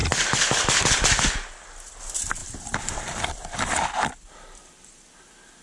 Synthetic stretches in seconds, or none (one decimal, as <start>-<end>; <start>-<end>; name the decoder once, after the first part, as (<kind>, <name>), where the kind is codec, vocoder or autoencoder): 2.4-3.9 (vocoder, BigVGAN v2)